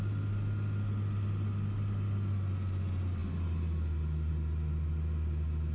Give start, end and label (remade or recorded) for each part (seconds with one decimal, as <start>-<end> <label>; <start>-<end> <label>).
0.0-5.7 recorded